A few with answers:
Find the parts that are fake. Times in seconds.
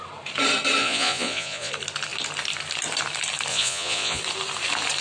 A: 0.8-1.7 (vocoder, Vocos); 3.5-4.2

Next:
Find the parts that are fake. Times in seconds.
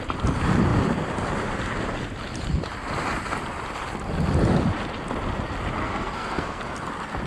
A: 5.8-6.6 (codec, SNAC)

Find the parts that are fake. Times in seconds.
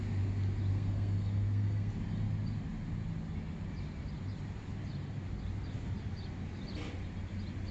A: 0.7-1.9 (codec, SNAC)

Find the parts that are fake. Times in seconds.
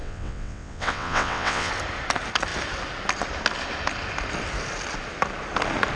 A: 0.0-1.7 (vocoder, WaveNeXt)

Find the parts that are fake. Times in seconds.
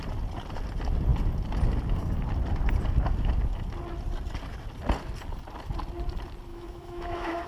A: 6.5-7.5 (autoencoder, DAC-VAE)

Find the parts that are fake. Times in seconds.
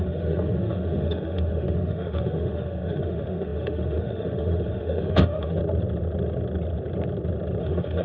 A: 0.0-5.6 (autoencoder, DAC-VAE); 7.6-8.0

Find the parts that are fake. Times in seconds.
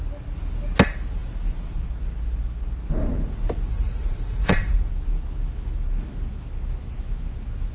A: 3.7-4.9 (vocoder, Vocos)